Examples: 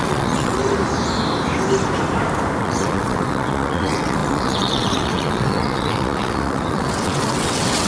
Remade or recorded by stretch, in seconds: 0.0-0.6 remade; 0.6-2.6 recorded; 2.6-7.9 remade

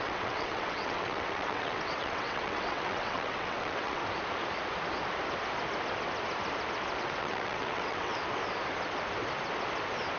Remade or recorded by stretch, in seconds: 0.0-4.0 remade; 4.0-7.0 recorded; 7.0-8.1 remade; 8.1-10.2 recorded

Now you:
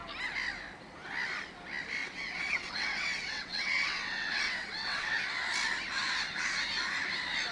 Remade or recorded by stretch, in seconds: 0.0-2.0 recorded; 2.0-5.2 remade; 5.2-7.5 recorded